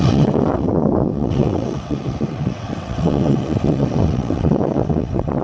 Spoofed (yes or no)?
yes